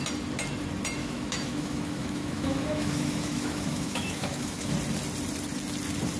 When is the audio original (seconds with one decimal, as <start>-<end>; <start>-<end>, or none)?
0.0-1.0; 4.7-6.2